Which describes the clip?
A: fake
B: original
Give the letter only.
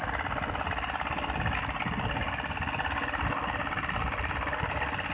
B